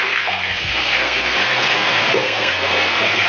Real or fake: fake